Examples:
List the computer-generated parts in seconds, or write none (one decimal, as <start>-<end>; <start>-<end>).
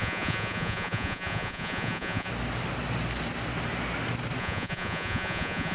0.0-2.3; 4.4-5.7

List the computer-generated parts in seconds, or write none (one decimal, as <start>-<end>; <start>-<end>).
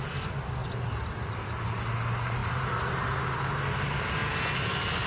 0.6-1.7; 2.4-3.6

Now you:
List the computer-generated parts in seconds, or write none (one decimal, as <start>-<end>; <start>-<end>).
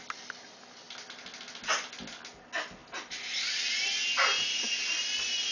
none